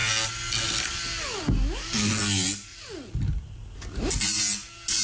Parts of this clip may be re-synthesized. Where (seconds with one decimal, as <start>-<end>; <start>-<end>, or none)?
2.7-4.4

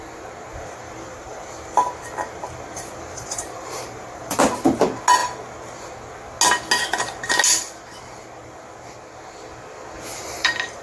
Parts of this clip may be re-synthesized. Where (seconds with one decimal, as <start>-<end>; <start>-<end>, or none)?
0.5-4.4; 10.1-10.8

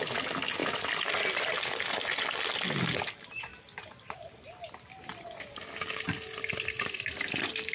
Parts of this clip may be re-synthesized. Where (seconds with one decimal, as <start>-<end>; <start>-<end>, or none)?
3.5-7.7